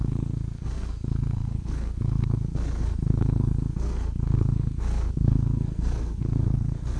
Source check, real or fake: fake